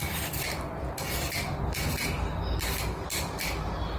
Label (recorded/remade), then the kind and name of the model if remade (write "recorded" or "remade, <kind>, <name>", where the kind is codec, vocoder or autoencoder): recorded